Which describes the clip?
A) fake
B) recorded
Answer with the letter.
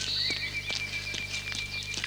B